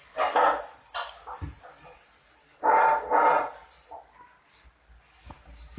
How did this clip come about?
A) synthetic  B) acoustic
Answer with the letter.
B